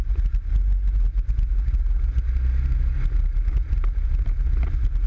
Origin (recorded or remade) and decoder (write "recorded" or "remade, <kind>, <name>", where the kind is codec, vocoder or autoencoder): recorded